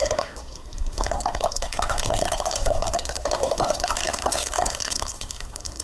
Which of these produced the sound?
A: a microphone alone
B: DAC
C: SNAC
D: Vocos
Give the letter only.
C